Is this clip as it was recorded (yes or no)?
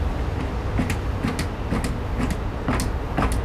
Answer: yes